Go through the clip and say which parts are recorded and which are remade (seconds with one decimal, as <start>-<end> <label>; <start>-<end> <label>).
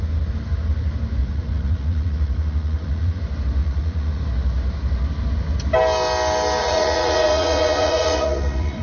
0.0-1.2 recorded; 1.2-3.2 remade; 3.2-3.6 recorded; 3.6-4.2 remade; 4.2-6.6 recorded; 6.6-8.8 remade